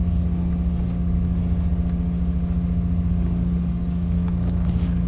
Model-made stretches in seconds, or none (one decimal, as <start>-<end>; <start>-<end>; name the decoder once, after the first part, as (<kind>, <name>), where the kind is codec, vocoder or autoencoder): 3.1-5.1 (codec, DAC)